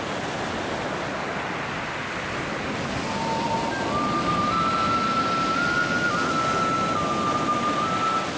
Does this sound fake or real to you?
real